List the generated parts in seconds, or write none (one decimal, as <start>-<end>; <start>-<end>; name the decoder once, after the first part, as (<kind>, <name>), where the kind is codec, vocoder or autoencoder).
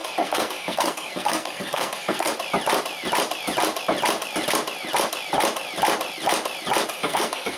0.0-2.3 (codec, SNAC); 6.9-7.6